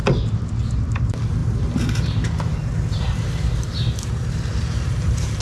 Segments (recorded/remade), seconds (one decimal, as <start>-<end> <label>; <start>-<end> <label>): 0.0-1.0 recorded; 1.0-5.4 remade